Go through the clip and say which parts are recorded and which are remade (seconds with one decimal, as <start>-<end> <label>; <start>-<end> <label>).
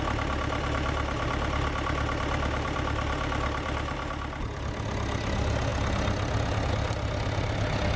0.0-8.0 recorded